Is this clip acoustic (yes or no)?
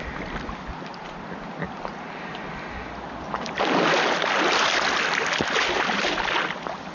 yes